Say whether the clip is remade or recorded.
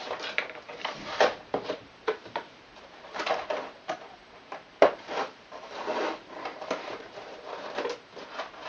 remade